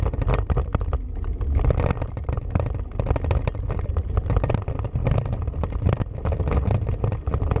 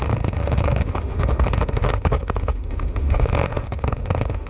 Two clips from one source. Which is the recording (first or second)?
first